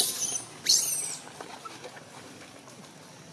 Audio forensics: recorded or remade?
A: recorded